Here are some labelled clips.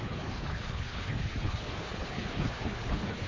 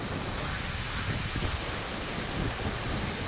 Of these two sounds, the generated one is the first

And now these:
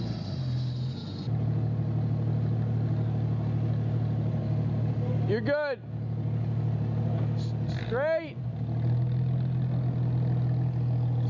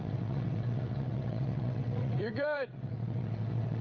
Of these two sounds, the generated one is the second